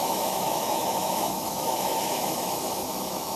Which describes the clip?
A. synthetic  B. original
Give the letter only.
A